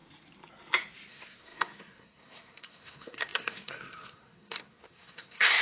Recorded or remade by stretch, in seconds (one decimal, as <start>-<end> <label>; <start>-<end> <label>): 0.0-1.1 recorded; 1.1-5.6 remade